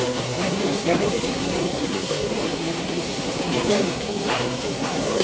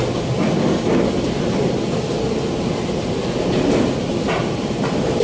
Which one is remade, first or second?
first